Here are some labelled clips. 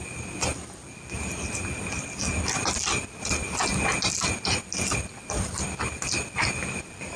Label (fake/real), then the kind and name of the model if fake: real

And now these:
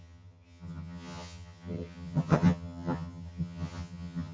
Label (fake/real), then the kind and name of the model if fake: fake, vocoder, HiFi-GAN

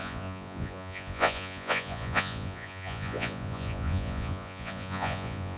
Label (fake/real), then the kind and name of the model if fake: fake, vocoder, Vocos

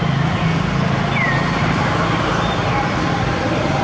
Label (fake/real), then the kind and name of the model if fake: real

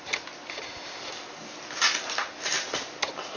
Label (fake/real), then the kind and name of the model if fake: real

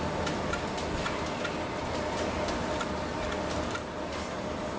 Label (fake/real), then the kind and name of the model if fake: real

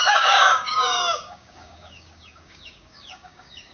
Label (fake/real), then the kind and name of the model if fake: fake, codec, DAC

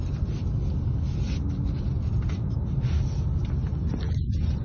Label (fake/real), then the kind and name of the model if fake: real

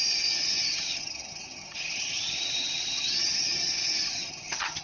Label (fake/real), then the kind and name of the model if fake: fake, vocoder, HiFi-GAN